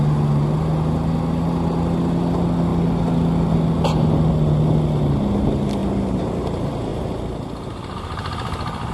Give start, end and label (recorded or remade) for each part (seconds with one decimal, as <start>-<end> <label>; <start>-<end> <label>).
0.0-8.9 recorded